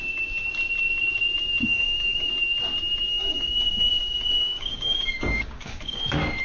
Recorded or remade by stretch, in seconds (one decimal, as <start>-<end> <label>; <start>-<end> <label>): 0.0-1.6 recorded; 1.6-2.3 remade; 2.3-3.1 recorded; 3.1-6.0 remade; 6.0-6.4 recorded